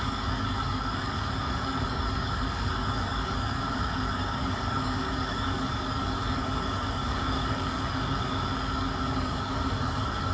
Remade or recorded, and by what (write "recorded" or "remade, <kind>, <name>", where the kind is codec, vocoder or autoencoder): remade, codec, DAC